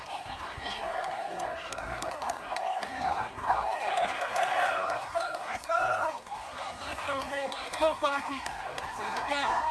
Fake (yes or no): yes